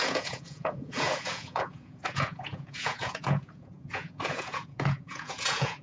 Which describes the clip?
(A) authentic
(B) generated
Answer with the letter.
B